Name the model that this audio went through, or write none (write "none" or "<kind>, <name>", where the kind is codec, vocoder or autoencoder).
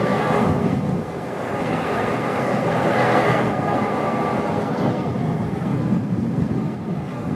codec, SNAC